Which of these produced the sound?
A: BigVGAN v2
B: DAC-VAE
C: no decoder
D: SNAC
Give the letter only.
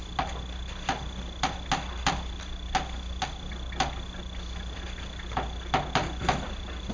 C